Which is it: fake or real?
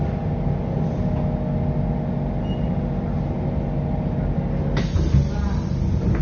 real